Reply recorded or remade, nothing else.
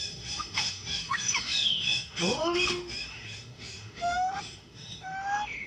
remade